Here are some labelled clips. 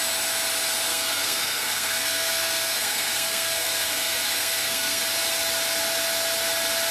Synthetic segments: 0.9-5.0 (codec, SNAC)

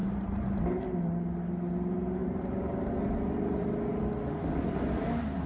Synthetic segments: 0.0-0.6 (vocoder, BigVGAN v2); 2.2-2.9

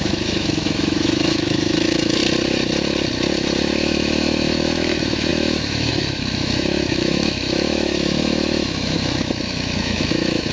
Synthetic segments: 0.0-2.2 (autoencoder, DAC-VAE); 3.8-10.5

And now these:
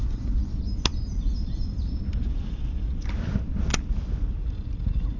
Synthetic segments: none

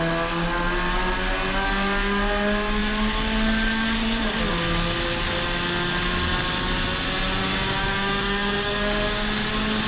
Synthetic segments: 7.4-9.5 (codec, DAC)

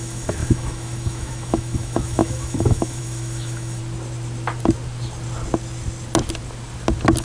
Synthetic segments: 0.0-3.8 (autoencoder, DAC-VAE)

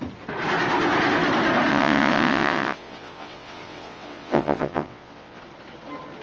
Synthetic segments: 1.7-5.4 (vocoder, WaveNeXt)